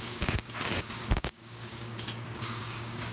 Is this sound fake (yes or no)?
yes